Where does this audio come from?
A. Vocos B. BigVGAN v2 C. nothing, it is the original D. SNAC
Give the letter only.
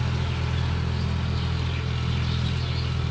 C